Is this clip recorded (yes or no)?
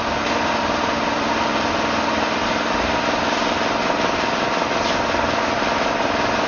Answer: yes